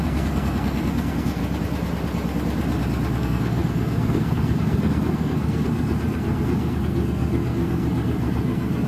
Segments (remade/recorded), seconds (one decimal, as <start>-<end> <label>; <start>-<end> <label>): 0.0-1.4 remade; 1.4-3.2 recorded; 3.2-8.9 remade